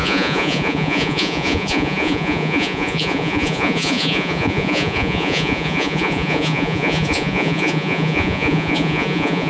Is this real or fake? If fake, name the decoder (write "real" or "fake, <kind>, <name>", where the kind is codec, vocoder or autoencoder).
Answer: fake, vocoder, Vocos